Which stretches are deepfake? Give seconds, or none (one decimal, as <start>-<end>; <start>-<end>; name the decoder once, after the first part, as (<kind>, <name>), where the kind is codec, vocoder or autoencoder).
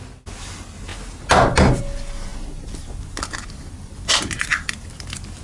none